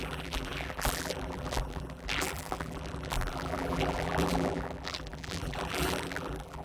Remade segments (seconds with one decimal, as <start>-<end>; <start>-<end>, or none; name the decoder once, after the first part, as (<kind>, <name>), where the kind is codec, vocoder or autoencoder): 0.0-6.6 (vocoder, BigVGAN v2)